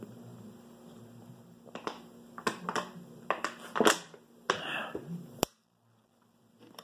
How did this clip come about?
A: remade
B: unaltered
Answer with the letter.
B